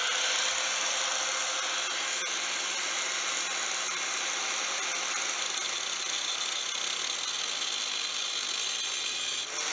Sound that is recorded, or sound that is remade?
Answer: recorded